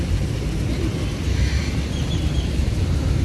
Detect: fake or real fake